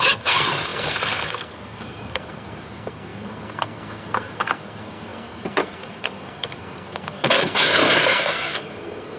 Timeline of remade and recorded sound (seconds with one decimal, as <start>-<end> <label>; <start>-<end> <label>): 0.0-9.2 remade